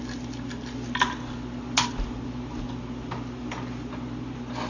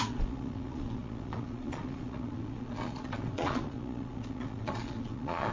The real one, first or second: first